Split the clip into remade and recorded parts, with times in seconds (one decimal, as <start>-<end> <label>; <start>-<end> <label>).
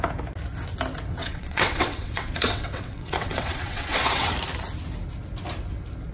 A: 0.0-1.2 recorded; 1.2-4.3 remade; 4.3-6.1 recorded